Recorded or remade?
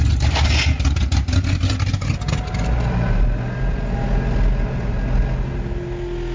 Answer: recorded